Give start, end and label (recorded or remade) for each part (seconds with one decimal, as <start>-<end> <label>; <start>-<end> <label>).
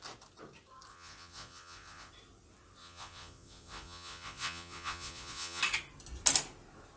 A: 0.0-0.9 recorded; 0.9-2.1 remade; 2.1-2.8 recorded; 2.8-5.6 remade; 5.6-7.0 recorded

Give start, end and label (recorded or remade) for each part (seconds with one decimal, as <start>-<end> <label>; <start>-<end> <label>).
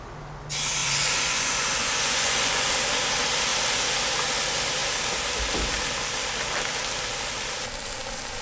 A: 0.0-0.8 recorded; 0.8-2.7 remade; 2.7-8.4 recorded